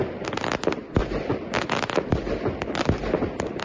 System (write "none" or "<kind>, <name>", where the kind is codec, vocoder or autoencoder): none